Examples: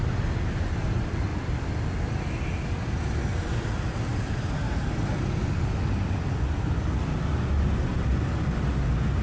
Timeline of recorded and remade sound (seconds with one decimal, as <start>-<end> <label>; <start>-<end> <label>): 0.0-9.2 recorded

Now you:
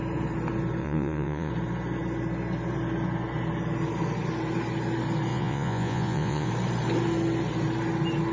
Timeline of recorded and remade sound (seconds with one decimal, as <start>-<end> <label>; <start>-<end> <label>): 0.0-0.8 recorded; 0.8-1.5 remade; 1.5-5.3 recorded; 5.3-6.5 remade; 6.5-8.3 recorded

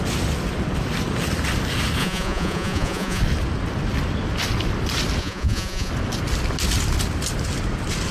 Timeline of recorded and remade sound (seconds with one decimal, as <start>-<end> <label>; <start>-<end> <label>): 0.0-2.0 recorded; 2.0-3.2 remade; 3.2-5.2 recorded; 5.2-5.9 remade; 5.9-8.1 recorded

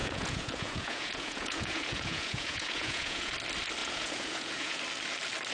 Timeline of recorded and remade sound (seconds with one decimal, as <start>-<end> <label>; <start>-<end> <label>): 0.0-3.3 remade; 3.3-3.8 recorded; 3.8-4.8 remade; 4.8-5.5 recorded

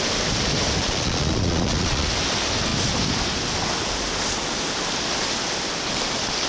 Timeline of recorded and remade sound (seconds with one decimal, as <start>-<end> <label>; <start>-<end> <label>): 0.0-0.8 recorded; 0.8-2.1 remade; 2.1-6.5 recorded